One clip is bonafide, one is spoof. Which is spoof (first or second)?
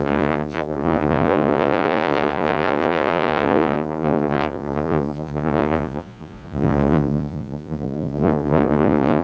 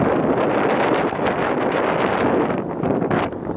first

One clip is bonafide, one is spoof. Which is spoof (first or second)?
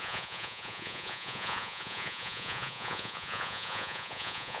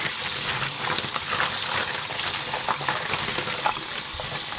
first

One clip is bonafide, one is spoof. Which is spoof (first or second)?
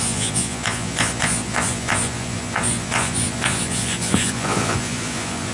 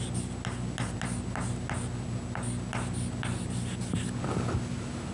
first